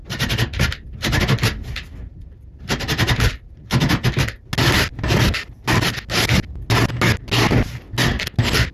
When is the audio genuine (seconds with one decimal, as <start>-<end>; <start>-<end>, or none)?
1.2-2.1; 3.9-8.7